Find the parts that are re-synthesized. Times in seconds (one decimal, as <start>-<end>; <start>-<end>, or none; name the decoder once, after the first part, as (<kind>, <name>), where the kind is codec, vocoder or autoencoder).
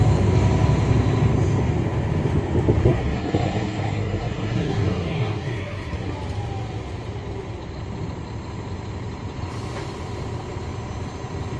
2.8-6.1 (codec, SNAC)